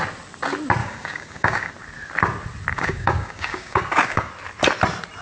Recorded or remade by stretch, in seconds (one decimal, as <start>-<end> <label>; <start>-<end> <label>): 0.0-0.8 recorded; 0.8-1.7 remade; 1.7-2.7 recorded; 2.7-4.3 remade; 4.3-5.2 recorded